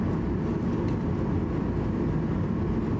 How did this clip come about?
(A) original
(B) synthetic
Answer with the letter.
A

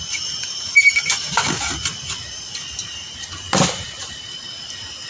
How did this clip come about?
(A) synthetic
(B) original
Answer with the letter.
B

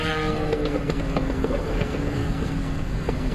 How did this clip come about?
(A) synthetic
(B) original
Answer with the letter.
A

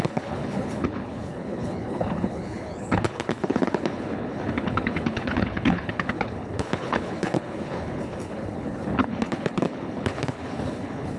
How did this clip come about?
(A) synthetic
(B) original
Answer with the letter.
A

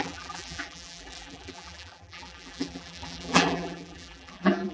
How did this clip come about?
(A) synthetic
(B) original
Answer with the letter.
A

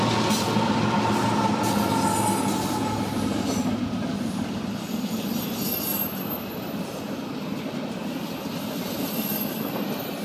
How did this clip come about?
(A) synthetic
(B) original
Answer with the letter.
B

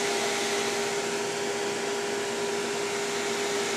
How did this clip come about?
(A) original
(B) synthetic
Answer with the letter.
A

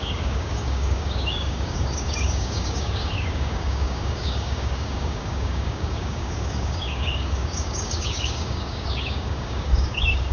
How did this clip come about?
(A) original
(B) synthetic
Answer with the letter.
B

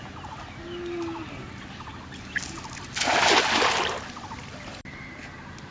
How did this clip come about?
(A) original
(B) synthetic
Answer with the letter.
A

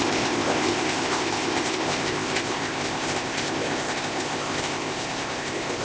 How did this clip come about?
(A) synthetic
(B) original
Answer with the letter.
A